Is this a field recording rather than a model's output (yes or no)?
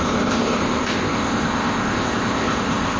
no